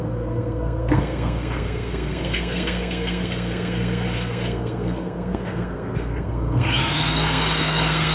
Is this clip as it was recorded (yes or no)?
no